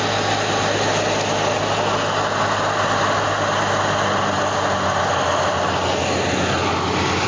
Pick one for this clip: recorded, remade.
recorded